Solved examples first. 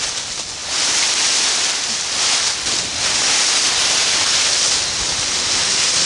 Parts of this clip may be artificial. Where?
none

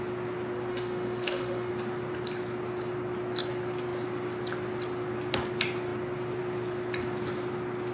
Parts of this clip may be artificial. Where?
0.7-1.7 (autoencoder, DAC-VAE)

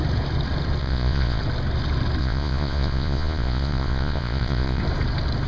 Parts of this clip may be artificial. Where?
0.8-1.4 (vocoder, Vocos); 2.2-4.8

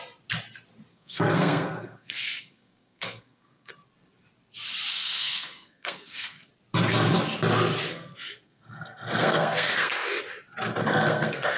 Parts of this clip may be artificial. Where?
0.9-3.7 (codec, SNAC); 4.9-6.5; 7.9-10.2; 10.8-11.6

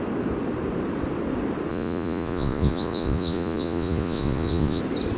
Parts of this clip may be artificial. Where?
1.7-4.8 (vocoder, Vocos)